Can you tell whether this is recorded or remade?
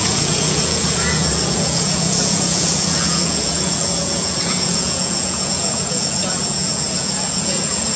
remade